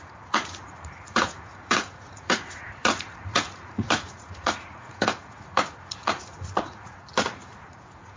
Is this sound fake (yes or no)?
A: yes